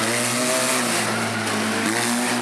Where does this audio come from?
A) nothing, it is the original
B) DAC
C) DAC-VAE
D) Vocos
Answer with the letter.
A